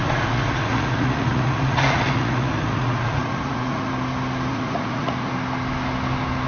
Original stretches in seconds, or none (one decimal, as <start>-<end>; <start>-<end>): 3.9-4.5; 5.3-6.5